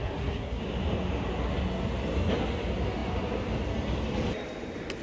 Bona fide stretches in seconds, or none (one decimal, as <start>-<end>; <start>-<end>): 0.6-5.0